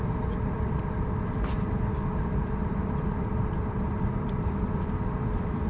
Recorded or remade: remade